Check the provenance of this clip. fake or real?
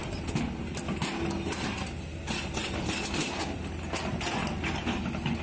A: real